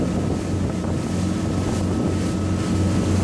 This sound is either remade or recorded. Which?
recorded